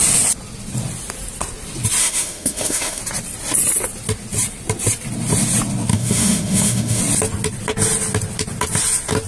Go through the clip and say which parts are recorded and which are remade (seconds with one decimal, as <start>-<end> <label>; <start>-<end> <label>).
0.0-2.0 recorded; 2.0-3.0 remade; 3.0-5.9 recorded; 5.9-7.0 remade; 7.0-9.3 recorded